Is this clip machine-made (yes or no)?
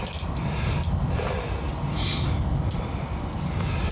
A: no